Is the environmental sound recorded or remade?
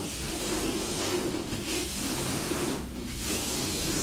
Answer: remade